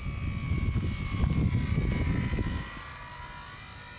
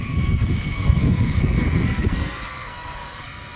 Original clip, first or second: first